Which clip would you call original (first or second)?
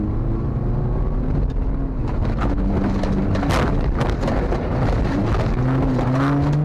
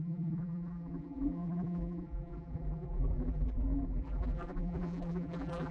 first